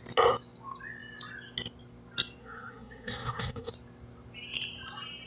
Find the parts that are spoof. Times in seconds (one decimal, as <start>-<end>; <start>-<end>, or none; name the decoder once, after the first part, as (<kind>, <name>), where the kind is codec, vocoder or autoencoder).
2.4-3.7 (codec, SNAC)